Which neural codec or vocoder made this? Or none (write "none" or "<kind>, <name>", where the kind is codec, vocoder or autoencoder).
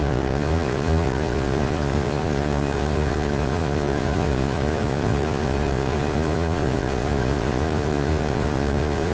vocoder, Vocos